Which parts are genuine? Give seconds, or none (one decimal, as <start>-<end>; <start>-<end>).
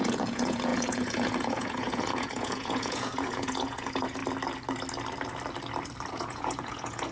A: 4.2-6.1